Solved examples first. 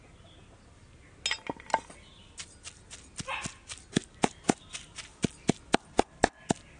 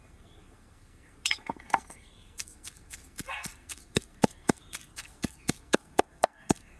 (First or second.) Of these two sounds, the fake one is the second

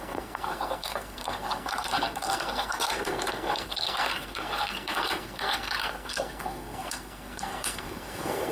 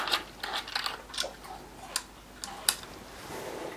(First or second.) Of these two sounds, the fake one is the first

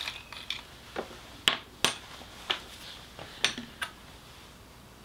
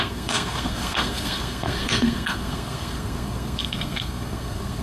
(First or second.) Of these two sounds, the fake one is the second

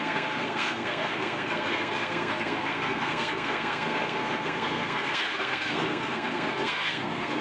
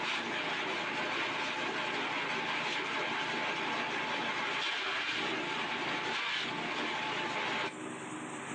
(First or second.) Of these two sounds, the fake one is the first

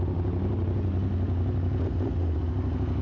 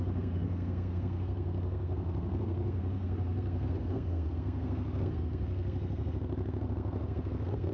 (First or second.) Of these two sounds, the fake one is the second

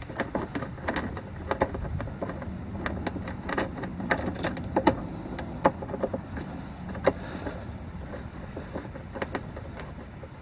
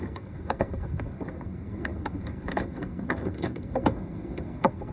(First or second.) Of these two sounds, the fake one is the second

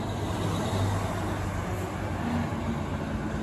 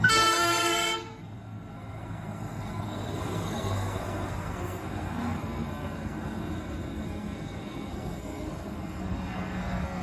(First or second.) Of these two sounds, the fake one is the second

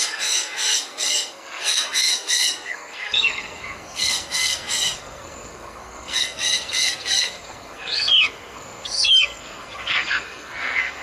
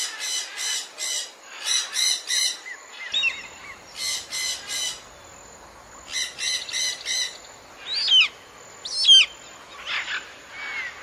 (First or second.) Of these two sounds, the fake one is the first